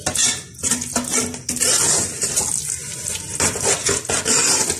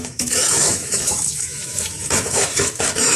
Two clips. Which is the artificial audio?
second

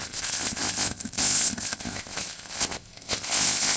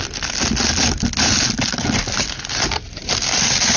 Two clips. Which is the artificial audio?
first